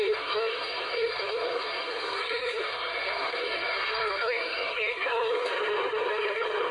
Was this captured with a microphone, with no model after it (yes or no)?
no